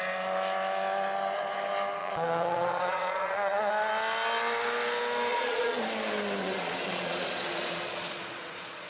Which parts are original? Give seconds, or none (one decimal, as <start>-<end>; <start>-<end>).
0.0-2.0; 3.7-5.3; 5.8-6.4